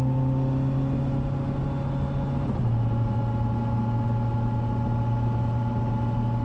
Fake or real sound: real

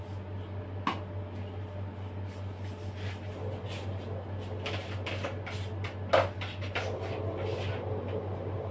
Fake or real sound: real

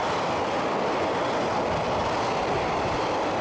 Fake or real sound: real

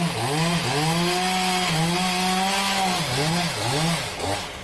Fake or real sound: real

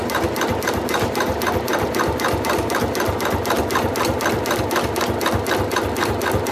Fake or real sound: real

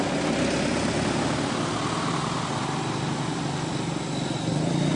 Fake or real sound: real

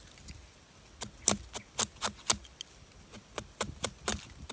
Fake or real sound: real